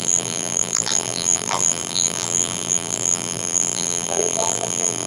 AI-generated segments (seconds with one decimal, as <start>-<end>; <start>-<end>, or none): 0.0-5.1